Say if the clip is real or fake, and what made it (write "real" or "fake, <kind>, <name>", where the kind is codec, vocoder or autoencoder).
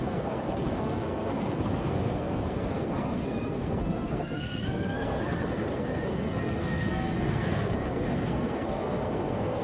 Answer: fake, codec, SNAC